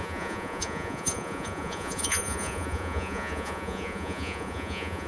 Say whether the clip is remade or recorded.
remade